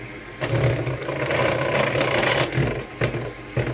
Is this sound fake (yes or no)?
no